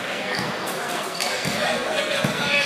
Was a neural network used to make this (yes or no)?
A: yes